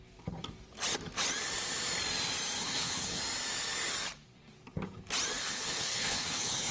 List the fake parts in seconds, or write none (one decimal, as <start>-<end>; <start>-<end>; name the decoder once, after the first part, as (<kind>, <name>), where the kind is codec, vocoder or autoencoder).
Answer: 2.6-3.2 (codec, HILCodec); 5.4-6.7